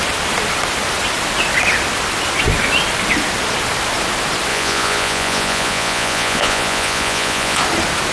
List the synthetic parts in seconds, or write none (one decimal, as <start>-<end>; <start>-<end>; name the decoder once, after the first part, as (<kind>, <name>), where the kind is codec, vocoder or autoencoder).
4.5-7.6 (vocoder, Vocos)